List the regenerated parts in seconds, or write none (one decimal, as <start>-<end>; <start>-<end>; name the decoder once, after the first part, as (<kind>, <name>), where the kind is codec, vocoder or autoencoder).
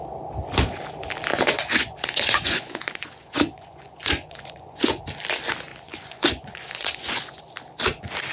1.3-5.0 (vocoder, Vocos); 5.7-7.4